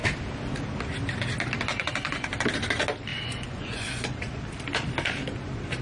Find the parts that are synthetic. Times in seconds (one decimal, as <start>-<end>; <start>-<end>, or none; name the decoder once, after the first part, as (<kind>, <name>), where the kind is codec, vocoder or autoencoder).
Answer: 1.7-2.3 (vocoder, Vocos); 3.1-4.4